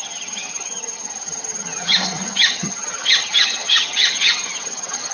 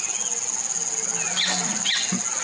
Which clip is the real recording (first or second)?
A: second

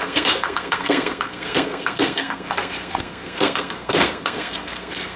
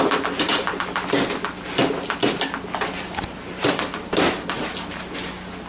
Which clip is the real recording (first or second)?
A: second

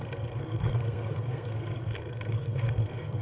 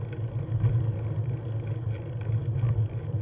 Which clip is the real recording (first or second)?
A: second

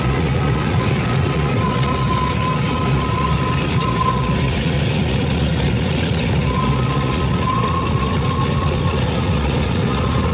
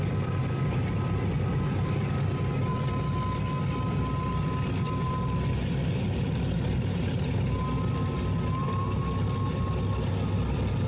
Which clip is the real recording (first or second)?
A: second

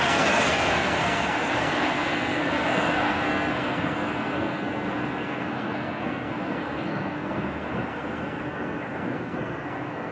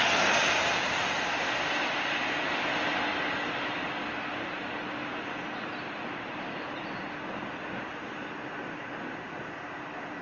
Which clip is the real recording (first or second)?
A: second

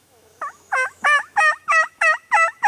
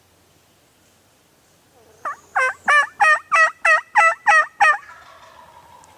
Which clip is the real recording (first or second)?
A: second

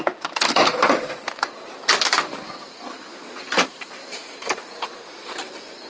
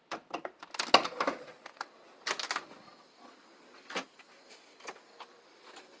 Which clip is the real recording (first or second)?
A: second